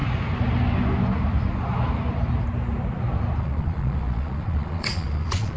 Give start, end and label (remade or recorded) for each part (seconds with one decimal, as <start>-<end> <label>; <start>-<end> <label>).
0.0-3.4 recorded; 3.4-5.6 remade